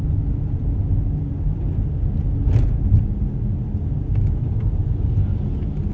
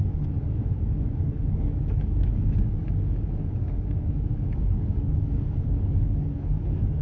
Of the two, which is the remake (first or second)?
second